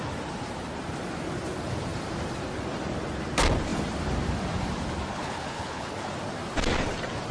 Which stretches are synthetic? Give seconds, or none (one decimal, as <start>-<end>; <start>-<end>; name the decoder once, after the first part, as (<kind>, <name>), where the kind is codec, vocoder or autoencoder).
5.1-5.9 (codec, HILCodec)